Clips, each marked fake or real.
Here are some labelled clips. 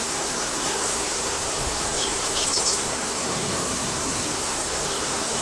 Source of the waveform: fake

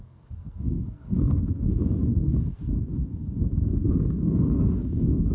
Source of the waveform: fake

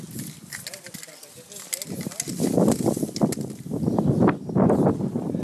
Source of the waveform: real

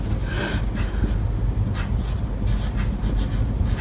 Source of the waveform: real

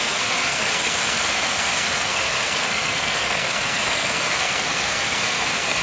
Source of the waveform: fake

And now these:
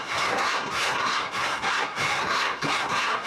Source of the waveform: fake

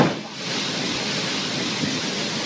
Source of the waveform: real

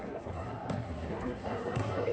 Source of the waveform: fake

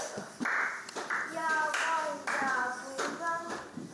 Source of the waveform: real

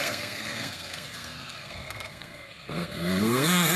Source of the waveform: fake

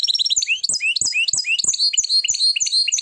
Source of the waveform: real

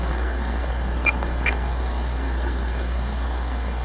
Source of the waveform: fake